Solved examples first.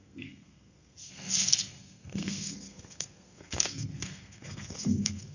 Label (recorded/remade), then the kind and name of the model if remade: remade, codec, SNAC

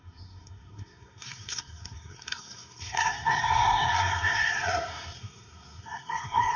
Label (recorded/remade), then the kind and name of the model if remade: remade, codec, SNAC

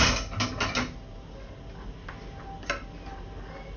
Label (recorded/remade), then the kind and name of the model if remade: recorded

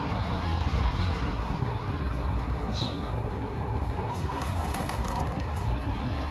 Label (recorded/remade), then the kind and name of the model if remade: remade, codec, SNAC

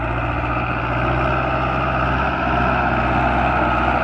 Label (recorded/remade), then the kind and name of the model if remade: recorded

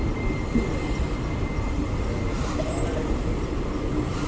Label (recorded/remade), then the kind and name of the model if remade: recorded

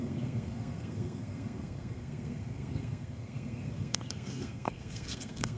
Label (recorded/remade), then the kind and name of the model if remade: remade, codec, SNAC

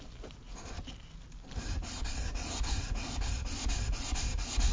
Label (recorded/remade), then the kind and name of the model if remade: recorded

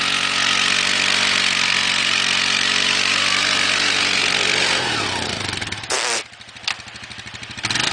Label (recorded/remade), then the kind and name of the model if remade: recorded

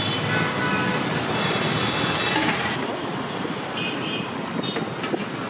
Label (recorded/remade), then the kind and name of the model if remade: recorded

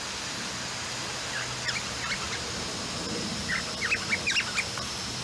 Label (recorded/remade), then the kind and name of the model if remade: recorded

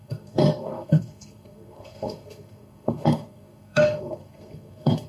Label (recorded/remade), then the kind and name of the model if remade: remade, codec, SNAC